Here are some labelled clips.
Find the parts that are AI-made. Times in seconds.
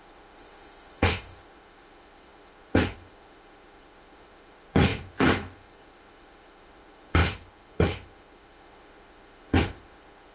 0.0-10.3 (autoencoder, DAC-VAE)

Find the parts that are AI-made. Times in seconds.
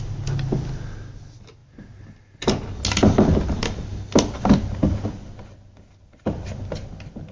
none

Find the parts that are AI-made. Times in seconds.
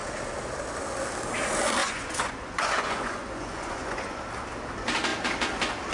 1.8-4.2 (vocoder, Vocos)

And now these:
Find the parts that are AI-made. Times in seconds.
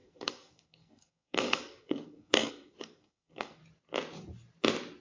0.0-3.6 (codec, SNAC)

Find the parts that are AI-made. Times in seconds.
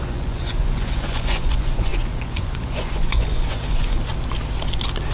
0.0-4.1 (vocoder, Vocos)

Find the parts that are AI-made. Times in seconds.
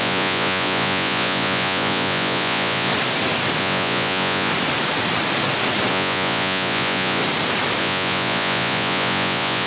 0.0-2.9 (vocoder, Vocos); 3.6-4.5; 5.9-7.2; 7.8-9.7